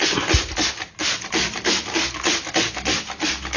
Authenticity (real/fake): real